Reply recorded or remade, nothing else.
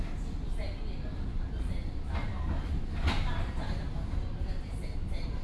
recorded